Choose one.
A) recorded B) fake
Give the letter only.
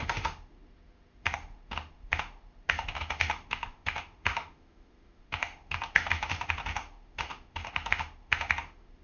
B